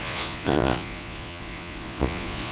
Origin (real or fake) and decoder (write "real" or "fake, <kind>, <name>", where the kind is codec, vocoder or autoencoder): fake, vocoder, Vocos